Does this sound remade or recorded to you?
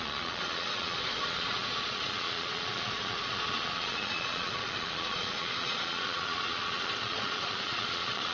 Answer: remade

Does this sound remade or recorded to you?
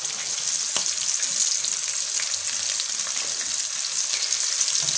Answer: recorded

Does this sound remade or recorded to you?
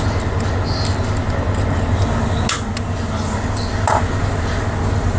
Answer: recorded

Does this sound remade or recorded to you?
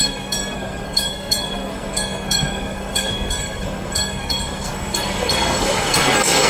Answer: remade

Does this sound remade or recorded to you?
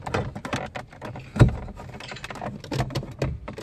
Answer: recorded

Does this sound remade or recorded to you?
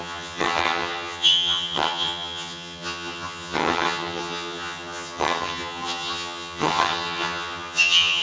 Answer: remade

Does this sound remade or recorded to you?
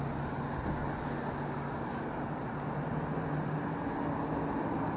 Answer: recorded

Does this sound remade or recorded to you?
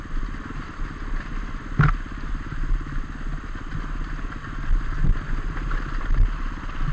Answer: recorded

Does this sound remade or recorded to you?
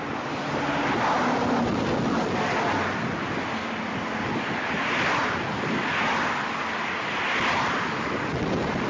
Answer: recorded